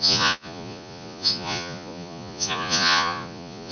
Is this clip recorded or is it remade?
remade